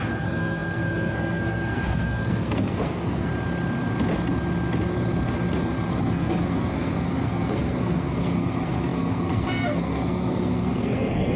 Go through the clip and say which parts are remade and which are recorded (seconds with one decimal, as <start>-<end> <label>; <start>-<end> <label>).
0.0-3.3 remade; 3.3-5.9 recorded; 5.9-11.4 remade